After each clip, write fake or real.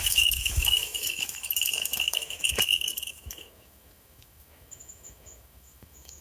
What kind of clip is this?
fake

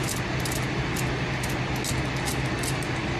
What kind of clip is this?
real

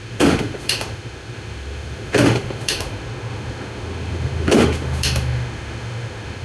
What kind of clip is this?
fake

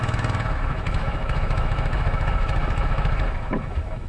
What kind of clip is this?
fake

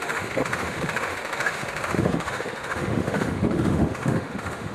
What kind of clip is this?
fake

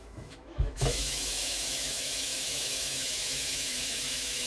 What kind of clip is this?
fake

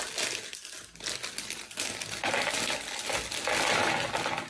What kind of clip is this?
real